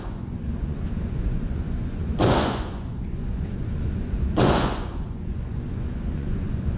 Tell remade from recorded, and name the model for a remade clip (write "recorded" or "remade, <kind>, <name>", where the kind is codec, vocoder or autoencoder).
remade, vocoder, Vocos